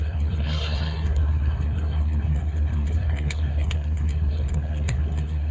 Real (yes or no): no